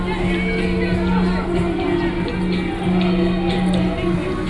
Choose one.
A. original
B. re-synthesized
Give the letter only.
A